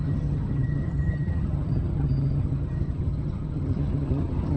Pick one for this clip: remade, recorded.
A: remade